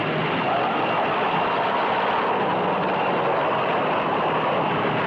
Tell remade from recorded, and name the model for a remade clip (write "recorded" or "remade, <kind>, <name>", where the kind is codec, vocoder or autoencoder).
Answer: recorded